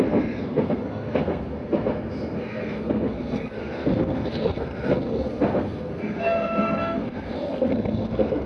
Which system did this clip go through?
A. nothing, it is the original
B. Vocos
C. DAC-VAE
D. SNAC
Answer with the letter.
D